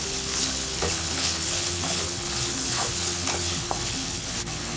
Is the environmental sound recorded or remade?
remade